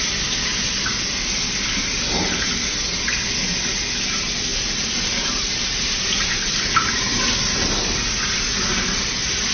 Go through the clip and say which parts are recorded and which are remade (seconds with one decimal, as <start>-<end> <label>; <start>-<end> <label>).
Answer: 0.0-4.5 recorded; 4.5-6.9 remade; 6.9-9.5 recorded